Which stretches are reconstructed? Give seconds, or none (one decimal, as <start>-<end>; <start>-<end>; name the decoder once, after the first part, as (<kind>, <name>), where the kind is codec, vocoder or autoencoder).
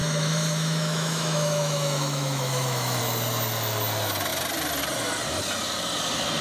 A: 0.0-3.0 (autoencoder, DAC-VAE)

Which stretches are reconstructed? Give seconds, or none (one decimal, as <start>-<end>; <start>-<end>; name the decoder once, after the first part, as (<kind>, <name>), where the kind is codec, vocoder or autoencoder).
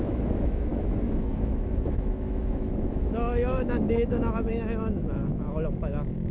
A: 0.0-6.3 (autoencoder, DAC-VAE)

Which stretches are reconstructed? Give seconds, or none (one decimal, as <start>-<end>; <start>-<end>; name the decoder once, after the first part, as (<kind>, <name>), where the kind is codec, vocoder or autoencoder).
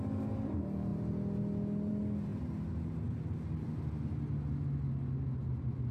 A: none